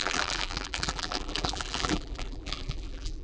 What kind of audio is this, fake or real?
fake